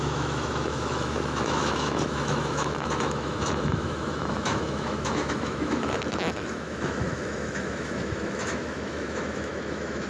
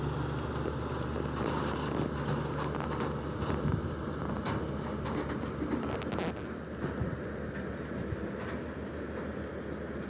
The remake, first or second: first